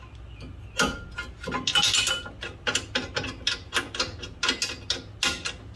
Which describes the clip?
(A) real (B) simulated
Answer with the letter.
A